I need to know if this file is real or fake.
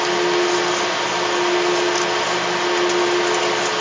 real